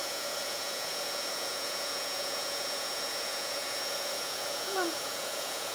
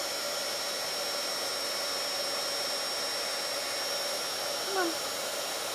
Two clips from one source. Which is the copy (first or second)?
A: first